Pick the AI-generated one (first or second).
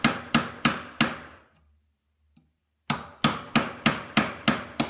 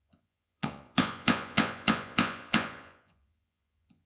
second